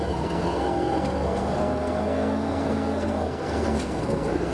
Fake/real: fake